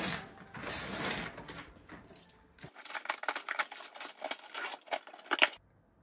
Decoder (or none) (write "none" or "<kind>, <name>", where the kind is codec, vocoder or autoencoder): none